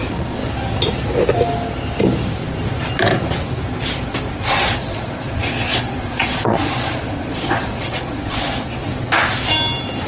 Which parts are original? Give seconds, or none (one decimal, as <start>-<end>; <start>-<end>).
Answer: 0.4-4.5; 8.9-10.1

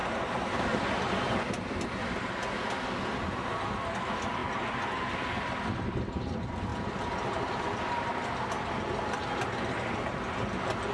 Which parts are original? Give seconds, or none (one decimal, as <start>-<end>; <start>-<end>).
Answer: 0.0-10.9